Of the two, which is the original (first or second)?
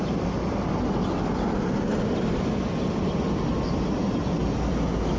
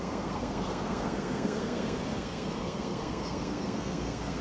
first